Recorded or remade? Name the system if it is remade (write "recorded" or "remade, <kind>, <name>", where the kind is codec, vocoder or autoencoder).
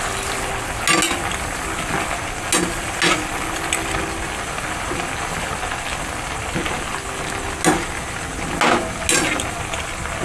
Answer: recorded